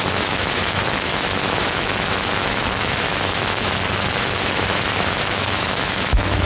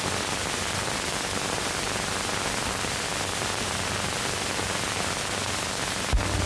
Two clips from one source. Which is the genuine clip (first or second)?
second